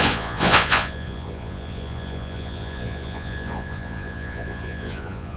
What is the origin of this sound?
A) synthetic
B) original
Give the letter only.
A